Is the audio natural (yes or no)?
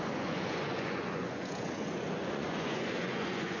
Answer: no